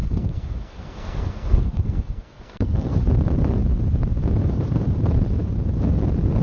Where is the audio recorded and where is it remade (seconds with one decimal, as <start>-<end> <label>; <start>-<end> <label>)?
0.0-3.0 remade; 3.0-6.4 recorded